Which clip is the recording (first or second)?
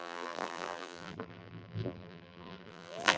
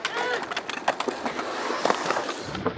second